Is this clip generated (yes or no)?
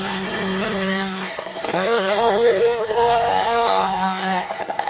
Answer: yes